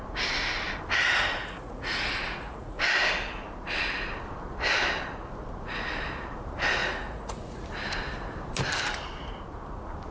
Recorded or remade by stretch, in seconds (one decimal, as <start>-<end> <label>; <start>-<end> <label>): 0.0-1.0 recorded; 1.0-2.8 remade; 2.8-6.8 recorded; 6.8-7.6 remade; 7.6-10.1 recorded